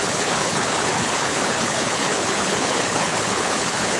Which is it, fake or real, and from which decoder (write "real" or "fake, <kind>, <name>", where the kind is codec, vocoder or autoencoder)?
fake, codec, HILCodec